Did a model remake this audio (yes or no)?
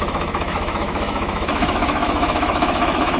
yes